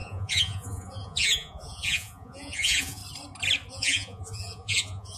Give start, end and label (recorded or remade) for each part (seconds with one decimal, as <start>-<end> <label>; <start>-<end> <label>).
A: 0.0-3.0 remade; 3.0-3.7 recorded; 3.7-5.2 remade